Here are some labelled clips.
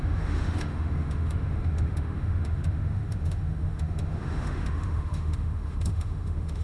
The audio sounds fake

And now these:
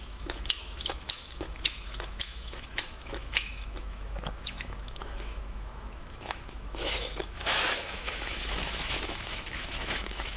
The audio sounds fake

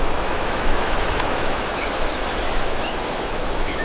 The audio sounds fake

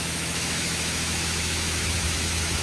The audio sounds fake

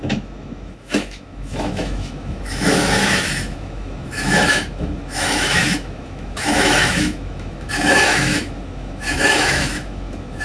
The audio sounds fake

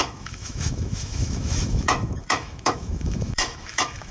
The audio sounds fake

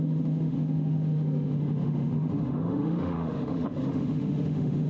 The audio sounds fake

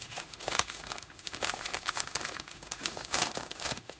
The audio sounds fake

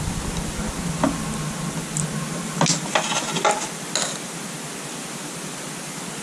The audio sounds real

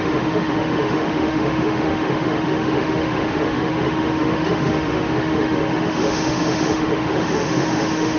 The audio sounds fake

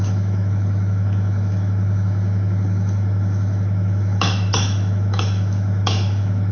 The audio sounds fake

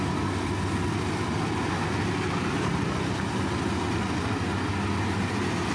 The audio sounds real